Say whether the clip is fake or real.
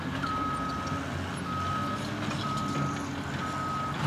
real